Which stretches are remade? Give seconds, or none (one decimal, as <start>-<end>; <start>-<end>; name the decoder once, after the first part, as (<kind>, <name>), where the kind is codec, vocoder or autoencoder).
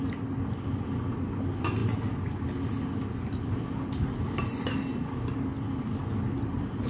none